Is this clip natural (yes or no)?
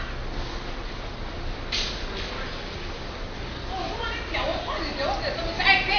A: yes